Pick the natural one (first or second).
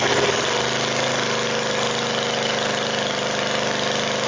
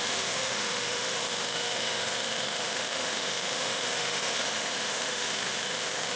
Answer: first